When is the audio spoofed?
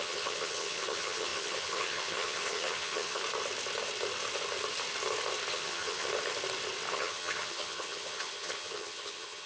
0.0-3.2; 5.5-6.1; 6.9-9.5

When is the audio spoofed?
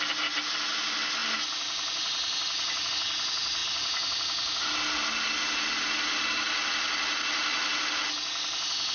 none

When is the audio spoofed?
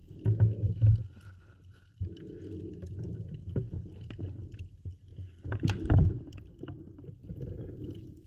4.6-5.1; 5.9-8.3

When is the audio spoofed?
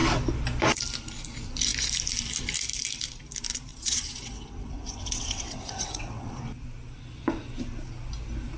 3.7-6.4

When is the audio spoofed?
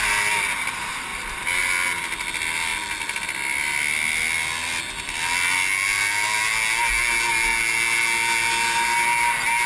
none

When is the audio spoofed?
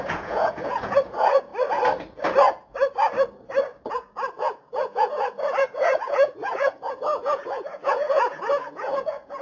0.0-1.5; 3.9-9.4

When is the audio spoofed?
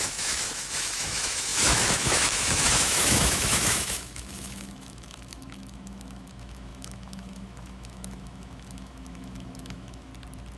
0.0-10.1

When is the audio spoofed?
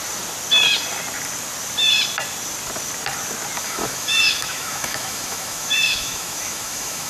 3.6-7.1